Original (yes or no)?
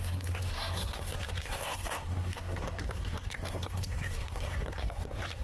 no